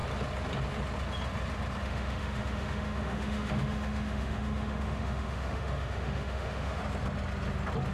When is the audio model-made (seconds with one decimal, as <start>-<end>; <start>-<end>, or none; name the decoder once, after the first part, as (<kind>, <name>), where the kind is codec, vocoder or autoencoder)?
1.8-6.8 (autoencoder, DAC-VAE)